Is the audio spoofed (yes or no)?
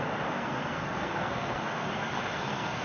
yes